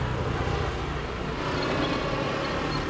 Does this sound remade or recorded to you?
recorded